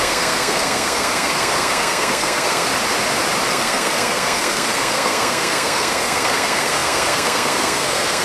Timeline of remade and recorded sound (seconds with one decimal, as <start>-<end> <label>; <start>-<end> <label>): 0.0-2.7 remade; 2.7-3.5 recorded; 3.5-8.2 remade